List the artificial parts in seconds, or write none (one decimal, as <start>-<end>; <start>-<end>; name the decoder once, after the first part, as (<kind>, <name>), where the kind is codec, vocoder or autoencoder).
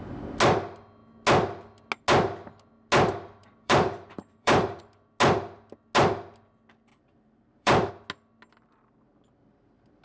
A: 3.4-4.8 (vocoder, BigVGAN v2); 6.9-7.9